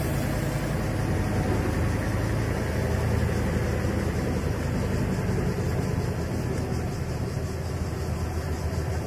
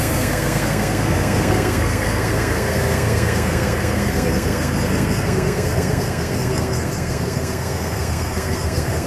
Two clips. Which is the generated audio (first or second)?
second